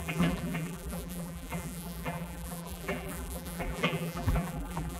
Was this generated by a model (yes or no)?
yes